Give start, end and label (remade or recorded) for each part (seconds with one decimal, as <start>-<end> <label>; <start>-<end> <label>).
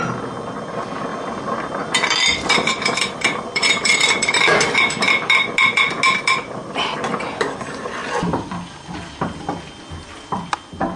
0.0-1.1 recorded; 1.1-5.3 remade; 5.3-11.0 recorded